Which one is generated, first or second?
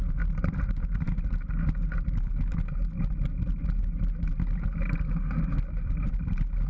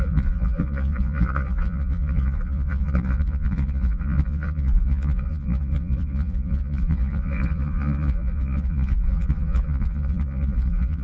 second